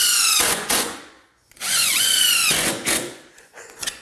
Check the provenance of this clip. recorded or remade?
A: remade